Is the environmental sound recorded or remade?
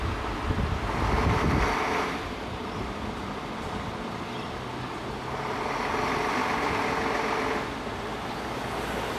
recorded